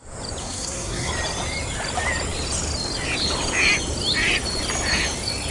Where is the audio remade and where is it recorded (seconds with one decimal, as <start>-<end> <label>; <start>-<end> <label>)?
0.0-0.4 recorded; 0.4-1.1 remade; 1.1-5.5 recorded